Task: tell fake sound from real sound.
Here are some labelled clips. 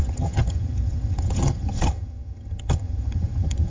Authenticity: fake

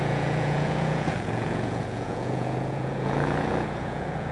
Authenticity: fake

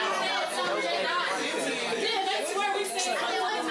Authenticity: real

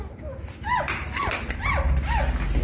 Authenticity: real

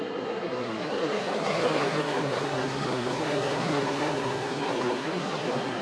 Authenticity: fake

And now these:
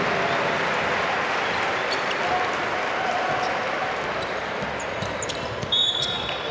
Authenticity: real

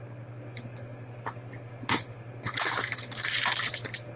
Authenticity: real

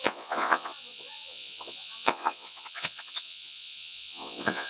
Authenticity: fake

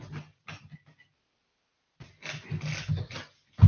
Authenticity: real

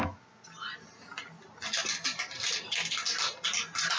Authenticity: real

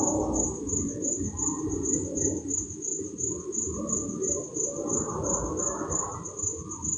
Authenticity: real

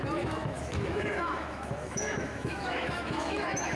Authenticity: fake